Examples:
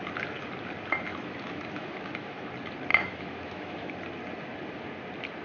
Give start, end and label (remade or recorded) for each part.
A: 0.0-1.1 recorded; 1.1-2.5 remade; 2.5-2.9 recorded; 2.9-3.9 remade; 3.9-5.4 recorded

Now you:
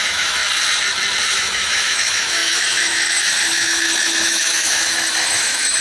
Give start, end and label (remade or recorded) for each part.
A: 0.0-0.4 remade; 0.4-1.3 recorded; 1.3-5.8 remade

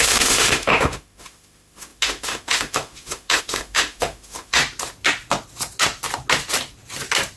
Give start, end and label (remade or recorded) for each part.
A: 0.0-4.6 remade; 4.6-7.4 recorded

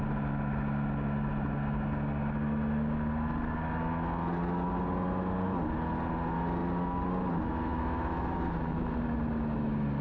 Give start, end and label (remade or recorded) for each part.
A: 0.0-7.7 recorded; 7.7-8.4 remade; 8.4-10.0 recorded

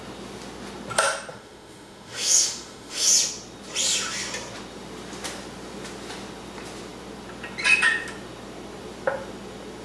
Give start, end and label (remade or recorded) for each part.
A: 0.0-1.3 recorded; 1.3-3.1 remade; 3.1-9.8 recorded